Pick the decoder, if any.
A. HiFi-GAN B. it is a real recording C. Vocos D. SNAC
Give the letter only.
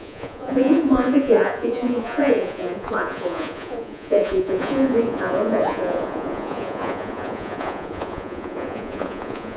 C